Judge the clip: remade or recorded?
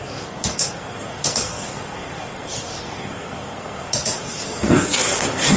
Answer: remade